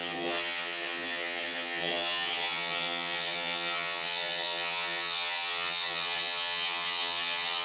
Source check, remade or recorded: remade